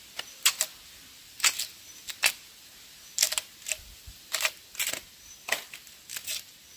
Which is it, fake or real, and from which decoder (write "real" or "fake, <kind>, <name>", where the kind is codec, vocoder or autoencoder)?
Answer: real